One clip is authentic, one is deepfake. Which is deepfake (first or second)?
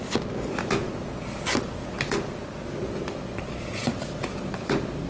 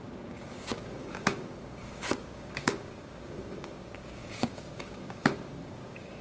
second